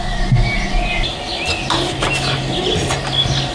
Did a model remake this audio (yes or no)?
no